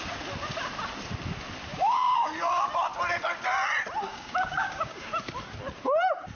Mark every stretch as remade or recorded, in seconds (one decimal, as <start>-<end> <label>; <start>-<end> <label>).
0.0-1.7 recorded; 1.7-2.3 remade; 2.3-4.1 recorded; 4.1-5.1 remade; 5.1-6.3 recorded